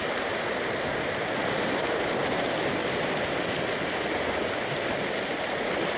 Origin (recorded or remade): recorded